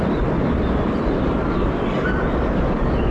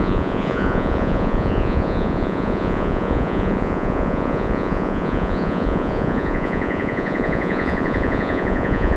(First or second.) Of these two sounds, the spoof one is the second